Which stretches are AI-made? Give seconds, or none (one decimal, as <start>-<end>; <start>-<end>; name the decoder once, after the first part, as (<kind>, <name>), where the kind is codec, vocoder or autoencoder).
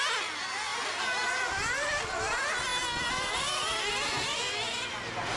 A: none